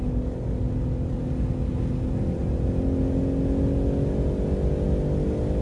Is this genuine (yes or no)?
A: yes